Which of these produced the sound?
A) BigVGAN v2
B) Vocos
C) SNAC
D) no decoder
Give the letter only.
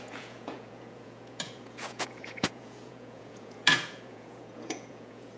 B